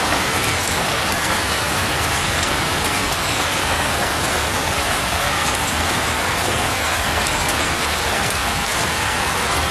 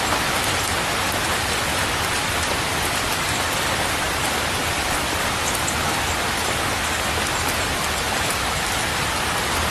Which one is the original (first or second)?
second